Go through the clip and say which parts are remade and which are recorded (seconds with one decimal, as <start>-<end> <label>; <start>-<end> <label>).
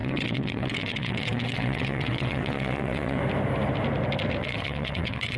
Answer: 0.0-3.2 remade; 3.2-4.4 recorded; 4.4-5.4 remade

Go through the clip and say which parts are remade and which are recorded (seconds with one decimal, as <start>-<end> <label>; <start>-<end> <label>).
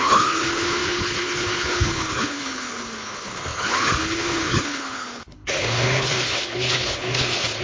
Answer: 0.0-7.6 remade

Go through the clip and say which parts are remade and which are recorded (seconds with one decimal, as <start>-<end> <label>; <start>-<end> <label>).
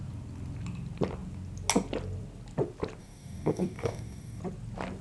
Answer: 0.0-3.0 recorded; 3.0-4.4 remade; 4.4-5.0 recorded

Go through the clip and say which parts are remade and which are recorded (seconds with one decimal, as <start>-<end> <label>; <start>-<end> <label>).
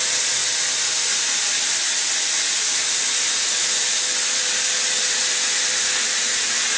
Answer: 0.0-6.8 recorded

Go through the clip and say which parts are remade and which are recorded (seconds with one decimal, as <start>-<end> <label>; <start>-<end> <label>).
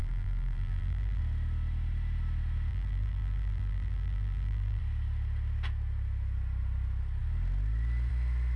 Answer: 0.0-1.2 remade; 1.2-2.7 recorded; 2.7-4.8 remade; 4.8-8.6 recorded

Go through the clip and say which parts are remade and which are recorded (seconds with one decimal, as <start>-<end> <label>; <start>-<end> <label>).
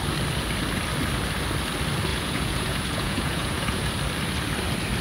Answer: 0.0-2.1 recorded; 2.1-3.9 remade; 3.9-5.0 recorded